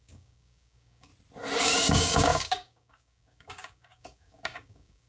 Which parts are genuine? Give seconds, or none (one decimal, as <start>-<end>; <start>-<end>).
1.1-1.6